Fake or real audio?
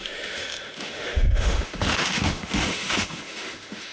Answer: fake